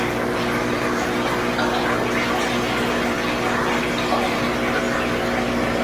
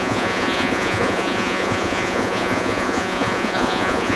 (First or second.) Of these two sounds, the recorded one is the first